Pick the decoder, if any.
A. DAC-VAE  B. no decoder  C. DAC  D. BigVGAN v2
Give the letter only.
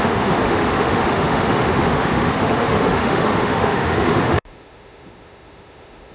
A